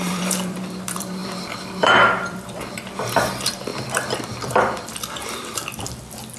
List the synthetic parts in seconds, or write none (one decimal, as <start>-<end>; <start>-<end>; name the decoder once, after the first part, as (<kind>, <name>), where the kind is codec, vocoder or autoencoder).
0.0-6.4 (vocoder, BigVGAN v2)